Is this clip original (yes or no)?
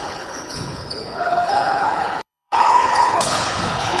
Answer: no